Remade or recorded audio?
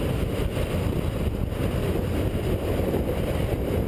recorded